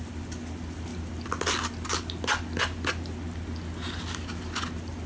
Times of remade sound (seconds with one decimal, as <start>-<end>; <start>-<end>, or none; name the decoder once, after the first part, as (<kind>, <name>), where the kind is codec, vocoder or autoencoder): none